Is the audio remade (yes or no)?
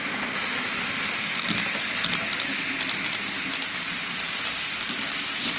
no